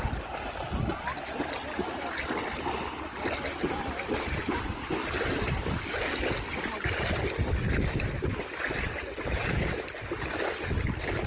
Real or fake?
real